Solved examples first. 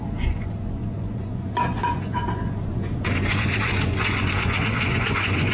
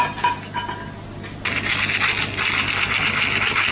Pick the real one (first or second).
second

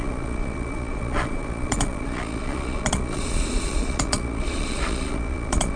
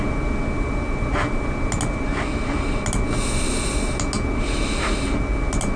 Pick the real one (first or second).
second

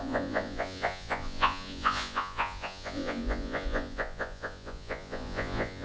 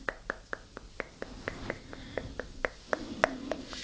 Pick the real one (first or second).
second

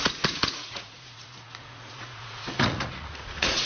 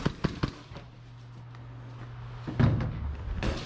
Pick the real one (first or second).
second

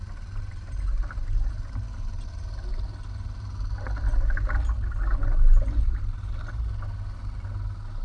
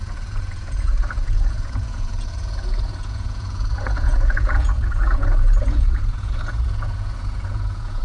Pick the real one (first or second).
first